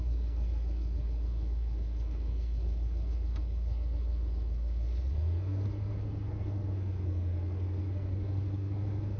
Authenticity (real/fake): fake